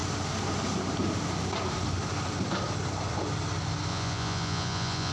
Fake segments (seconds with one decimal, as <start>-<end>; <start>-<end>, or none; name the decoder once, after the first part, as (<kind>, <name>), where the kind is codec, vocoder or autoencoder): 3.9-5.1 (vocoder, Vocos)